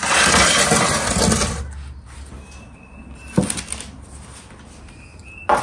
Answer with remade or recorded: recorded